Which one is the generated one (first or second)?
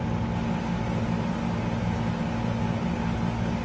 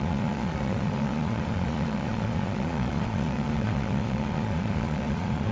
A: second